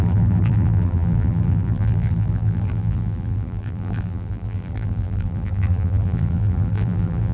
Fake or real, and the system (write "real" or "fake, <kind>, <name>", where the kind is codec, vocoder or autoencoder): fake, vocoder, BigVGAN v2